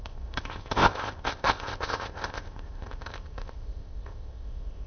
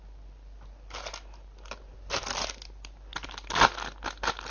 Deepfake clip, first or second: first